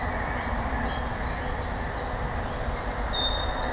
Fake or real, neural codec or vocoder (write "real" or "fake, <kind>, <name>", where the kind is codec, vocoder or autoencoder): real